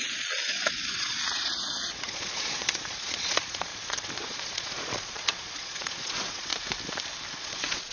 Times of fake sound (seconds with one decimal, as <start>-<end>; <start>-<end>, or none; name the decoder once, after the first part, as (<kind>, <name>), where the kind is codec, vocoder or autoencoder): 0.0-6.5 (vocoder, Vocos); 7.4-7.9